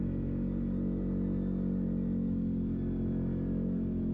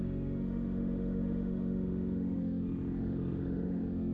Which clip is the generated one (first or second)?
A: second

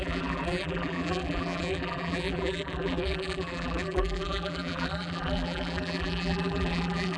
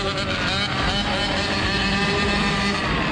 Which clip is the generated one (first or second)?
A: first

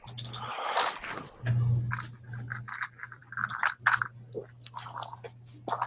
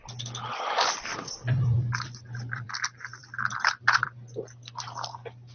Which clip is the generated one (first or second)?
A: second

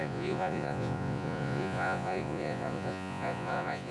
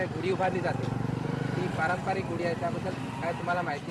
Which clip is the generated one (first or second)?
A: first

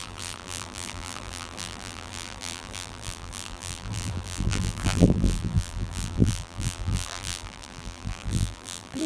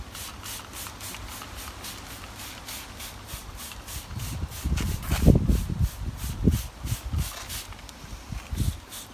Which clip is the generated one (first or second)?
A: first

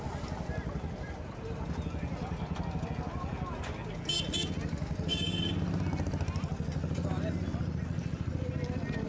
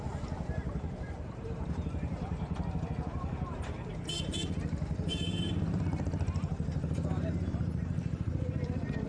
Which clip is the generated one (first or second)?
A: second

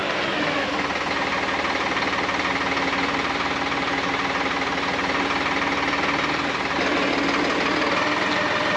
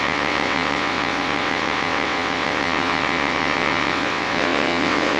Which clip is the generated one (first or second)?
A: second